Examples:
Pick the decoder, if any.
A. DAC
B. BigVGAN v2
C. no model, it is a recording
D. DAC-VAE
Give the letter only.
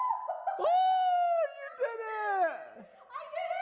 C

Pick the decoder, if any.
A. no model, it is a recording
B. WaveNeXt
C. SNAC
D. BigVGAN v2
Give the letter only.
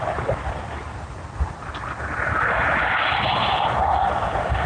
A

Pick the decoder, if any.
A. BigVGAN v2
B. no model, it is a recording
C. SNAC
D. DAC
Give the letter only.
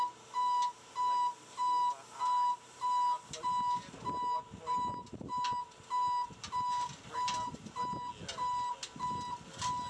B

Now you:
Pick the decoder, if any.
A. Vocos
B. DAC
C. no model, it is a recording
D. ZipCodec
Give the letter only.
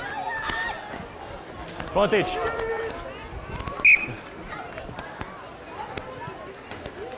C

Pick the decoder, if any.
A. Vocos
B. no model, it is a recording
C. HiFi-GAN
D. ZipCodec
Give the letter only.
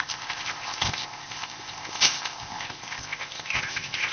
D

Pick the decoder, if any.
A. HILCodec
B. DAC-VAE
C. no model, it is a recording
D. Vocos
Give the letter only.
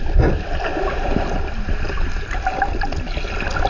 C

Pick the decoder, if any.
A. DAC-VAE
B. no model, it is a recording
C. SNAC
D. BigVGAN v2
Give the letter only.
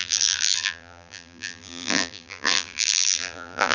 D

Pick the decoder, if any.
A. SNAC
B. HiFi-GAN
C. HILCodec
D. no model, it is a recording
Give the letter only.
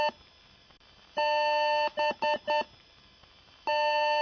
D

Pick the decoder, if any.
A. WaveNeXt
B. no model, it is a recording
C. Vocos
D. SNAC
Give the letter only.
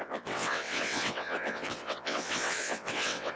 A